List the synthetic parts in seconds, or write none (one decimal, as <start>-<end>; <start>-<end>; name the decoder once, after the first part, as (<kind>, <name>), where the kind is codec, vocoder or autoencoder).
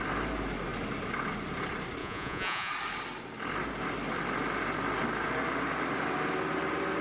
2.0-2.7 (vocoder, Vocos)